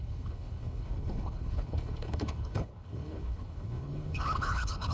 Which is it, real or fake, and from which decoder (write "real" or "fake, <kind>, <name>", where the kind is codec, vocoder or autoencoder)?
fake, codec, HILCodec